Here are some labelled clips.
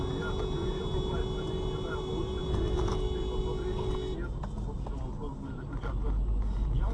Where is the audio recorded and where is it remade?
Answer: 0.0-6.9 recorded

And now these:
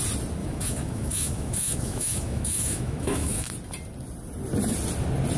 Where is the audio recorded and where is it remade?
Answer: 0.0-0.4 recorded; 0.4-3.5 remade; 3.5-5.4 recorded

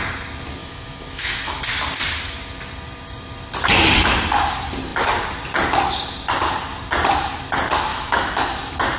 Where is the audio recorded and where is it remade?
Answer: 0.0-0.6 recorded; 0.6-1.6 remade; 1.6-7.9 recorded; 7.9-8.4 remade; 8.4-9.0 recorded

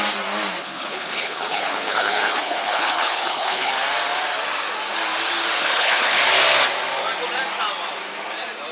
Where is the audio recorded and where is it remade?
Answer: 0.0-0.6 recorded; 0.6-3.7 remade; 3.7-5.6 recorded; 5.6-6.2 remade; 6.2-8.7 recorded

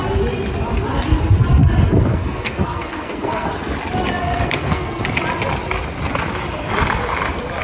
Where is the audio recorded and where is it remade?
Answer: 0.0-1.5 recorded; 1.5-3.5 remade; 3.5-4.2 recorded; 4.2-5.0 remade; 5.0-7.6 recorded